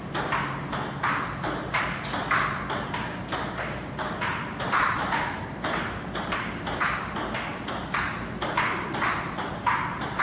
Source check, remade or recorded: recorded